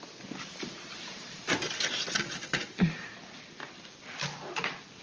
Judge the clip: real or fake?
real